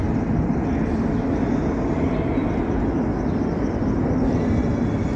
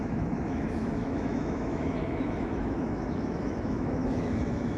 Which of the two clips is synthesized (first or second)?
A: second